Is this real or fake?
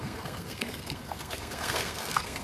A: fake